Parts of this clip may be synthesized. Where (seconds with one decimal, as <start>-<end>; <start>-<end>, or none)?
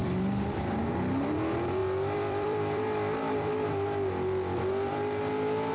0.0-0.6; 1.8-5.2